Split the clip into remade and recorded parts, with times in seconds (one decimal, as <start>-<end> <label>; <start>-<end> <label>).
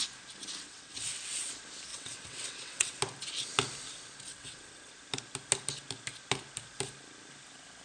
0.0-0.6 recorded; 0.6-1.5 remade; 1.5-1.9 recorded; 1.9-3.0 remade; 3.0-4.3 recorded; 4.3-4.9 remade; 4.9-7.8 recorded